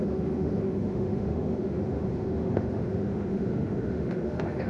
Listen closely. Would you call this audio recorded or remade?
remade